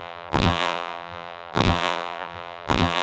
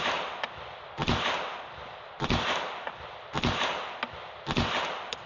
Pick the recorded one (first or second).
second